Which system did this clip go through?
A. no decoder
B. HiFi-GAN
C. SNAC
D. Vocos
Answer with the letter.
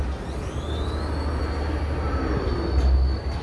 A